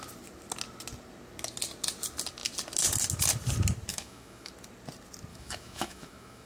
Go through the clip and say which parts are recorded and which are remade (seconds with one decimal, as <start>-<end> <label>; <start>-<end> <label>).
0.0-3.9 recorded; 3.9-4.5 remade; 4.5-5.3 recorded; 5.3-6.5 remade